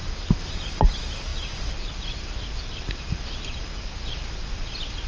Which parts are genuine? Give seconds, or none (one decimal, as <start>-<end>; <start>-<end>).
0.0-5.1